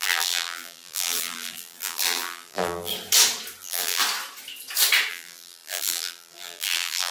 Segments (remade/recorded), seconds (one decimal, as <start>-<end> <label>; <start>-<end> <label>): 0.0-2.9 remade; 2.9-3.6 recorded; 3.6-4.0 remade; 4.0-5.1 recorded; 5.1-7.1 remade